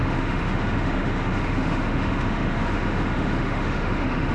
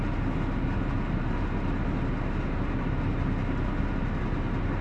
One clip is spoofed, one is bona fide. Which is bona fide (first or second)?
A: second